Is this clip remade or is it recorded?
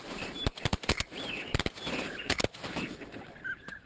remade